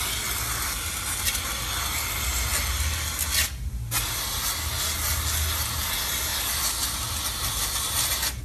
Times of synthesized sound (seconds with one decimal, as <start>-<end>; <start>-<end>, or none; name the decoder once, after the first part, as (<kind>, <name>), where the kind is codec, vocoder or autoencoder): none